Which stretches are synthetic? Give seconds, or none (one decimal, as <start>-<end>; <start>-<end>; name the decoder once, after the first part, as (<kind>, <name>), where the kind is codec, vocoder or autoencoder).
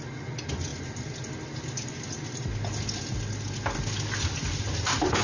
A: none